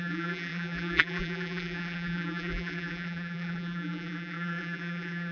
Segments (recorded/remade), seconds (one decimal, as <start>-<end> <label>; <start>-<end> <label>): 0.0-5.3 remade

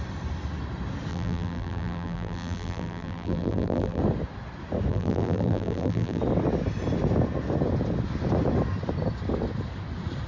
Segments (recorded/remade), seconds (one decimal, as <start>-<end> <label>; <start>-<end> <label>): 0.0-1.1 recorded; 1.1-4.0 remade; 4.0-4.9 recorded; 4.9-6.2 remade; 6.2-10.3 recorded

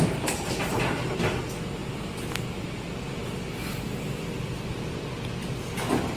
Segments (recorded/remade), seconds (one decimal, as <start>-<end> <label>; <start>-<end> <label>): 0.0-1.8 recorded; 1.8-5.5 remade; 5.5-6.2 recorded

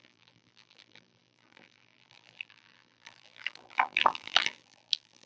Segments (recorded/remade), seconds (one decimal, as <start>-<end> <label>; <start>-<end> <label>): 0.0-5.3 remade

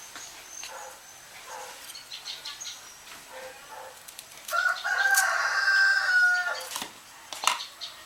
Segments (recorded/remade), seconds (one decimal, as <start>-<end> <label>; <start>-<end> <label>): 0.0-5.4 remade; 5.4-7.6 recorded; 7.6-8.1 remade

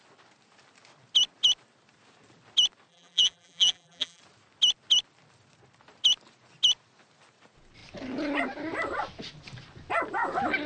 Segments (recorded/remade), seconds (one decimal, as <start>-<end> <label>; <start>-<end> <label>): 0.0-2.9 recorded; 2.9-4.2 remade; 4.2-10.7 recorded

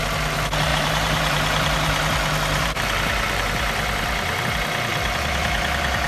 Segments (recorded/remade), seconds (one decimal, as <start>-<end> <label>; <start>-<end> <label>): 0.0-0.7 recorded; 0.7-4.4 remade; 4.4-4.9 recorded; 4.9-6.1 remade